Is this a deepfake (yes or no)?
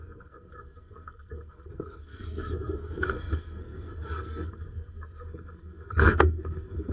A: yes